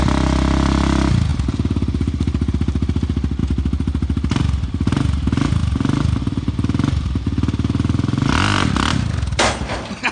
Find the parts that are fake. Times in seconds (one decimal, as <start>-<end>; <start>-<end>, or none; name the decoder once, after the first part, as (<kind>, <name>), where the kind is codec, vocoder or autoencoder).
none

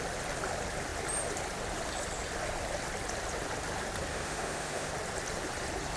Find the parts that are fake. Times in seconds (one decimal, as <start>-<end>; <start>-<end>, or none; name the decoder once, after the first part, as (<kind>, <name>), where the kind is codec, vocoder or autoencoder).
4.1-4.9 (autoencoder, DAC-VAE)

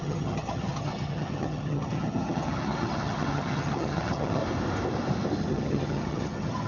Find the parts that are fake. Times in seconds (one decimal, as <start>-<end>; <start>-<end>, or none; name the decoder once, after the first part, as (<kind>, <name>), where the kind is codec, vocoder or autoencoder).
0.0-4.4 (vocoder, HiFi-GAN); 5.5-6.7

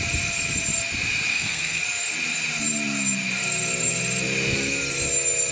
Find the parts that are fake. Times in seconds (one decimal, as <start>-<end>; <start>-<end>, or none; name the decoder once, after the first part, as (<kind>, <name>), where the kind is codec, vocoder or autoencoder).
1.3-1.8 (codec, SNAC)

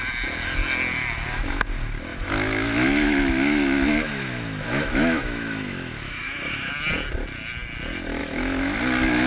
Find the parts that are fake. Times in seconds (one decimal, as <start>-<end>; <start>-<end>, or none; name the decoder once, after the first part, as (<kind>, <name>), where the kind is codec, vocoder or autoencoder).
2.1-6.7 (autoencoder, DAC-VAE); 8.2-8.8